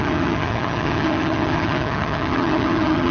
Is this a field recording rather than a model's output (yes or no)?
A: no